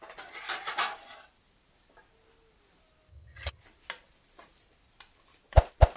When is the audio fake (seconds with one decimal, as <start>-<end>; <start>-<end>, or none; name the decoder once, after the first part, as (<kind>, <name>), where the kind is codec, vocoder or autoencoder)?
3.1-3.6 (vocoder, HiFi-GAN)